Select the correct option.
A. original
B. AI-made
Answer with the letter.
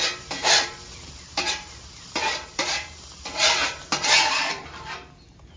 B